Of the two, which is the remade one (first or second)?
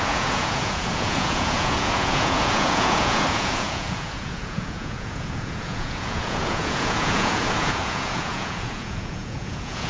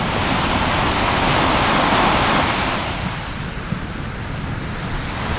first